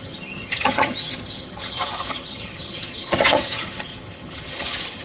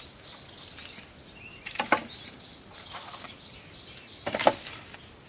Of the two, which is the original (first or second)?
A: second